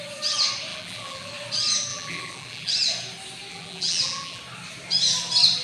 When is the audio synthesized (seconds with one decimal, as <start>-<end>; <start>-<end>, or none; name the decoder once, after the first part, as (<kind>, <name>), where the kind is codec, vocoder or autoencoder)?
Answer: 0.7-1.3 (vocoder, BigVGAN v2); 1.9-2.7; 3.5-4.4

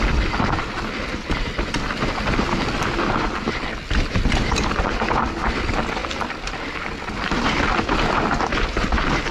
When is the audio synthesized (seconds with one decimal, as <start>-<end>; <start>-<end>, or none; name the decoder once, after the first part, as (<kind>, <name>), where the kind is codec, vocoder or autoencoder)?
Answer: none

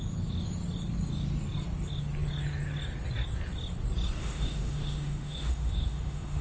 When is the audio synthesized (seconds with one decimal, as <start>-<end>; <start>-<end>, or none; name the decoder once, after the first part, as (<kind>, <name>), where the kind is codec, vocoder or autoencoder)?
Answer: 4.2-6.4 (autoencoder, DAC-VAE)

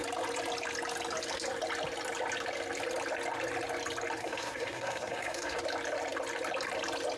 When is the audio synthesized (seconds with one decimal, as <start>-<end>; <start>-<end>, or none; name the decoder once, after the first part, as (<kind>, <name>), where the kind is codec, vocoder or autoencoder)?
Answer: 4.2-5.6 (codec, SNAC)

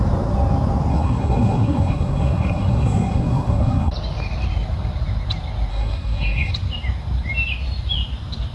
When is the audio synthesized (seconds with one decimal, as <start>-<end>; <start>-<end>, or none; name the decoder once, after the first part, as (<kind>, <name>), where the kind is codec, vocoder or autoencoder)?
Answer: 0.9-3.9 (codec, SNAC); 5.7-6.5